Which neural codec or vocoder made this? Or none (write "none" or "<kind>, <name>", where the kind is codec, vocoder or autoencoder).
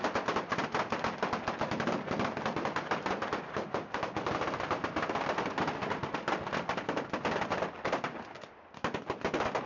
none